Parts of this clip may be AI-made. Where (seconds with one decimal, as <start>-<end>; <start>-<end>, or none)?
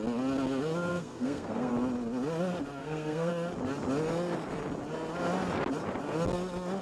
0.9-1.7; 2.8-3.3